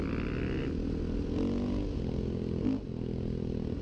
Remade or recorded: recorded